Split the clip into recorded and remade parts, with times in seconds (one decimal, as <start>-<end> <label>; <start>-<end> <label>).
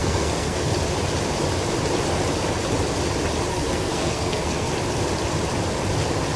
0.0-0.7 remade; 0.7-3.5 recorded; 3.5-4.7 remade; 4.7-6.4 recorded